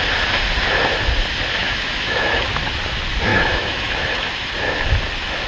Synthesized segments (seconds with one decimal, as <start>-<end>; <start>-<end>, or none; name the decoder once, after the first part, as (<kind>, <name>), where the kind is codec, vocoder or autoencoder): 1.6-2.6 (autoencoder, DAC-VAE); 3.3-4.5